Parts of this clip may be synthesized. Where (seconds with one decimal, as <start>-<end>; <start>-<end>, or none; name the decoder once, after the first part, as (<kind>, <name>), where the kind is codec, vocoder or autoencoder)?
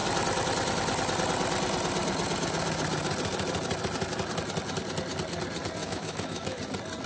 5.8-6.6 (autoencoder, DAC-VAE)